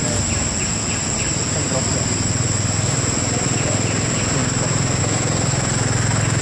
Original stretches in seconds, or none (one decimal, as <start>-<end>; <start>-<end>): 0.0-6.4